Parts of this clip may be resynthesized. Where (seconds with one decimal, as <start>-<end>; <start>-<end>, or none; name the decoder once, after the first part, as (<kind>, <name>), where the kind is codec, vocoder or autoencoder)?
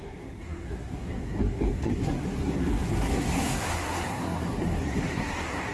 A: 0.0-5.7 (codec, SNAC)